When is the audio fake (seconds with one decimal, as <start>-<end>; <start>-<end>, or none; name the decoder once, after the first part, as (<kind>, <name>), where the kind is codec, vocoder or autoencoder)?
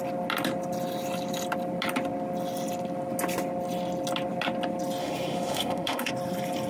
5.0-6.1 (autoencoder, DAC-VAE)